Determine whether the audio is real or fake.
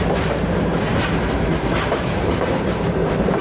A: fake